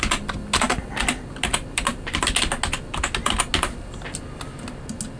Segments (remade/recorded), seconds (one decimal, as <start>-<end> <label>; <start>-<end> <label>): 0.0-1.5 recorded; 1.5-2.3 remade; 2.3-5.2 recorded